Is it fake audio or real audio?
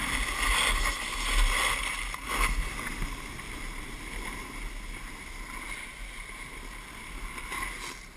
real